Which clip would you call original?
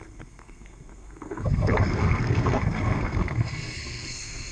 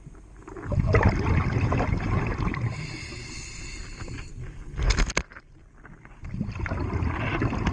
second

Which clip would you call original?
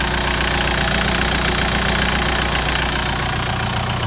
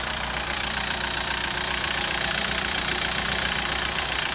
first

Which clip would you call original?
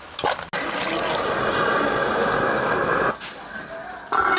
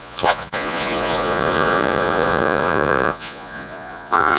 first